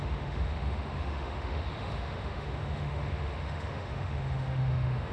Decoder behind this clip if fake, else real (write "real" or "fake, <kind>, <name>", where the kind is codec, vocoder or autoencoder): fake, autoencoder, DAC-VAE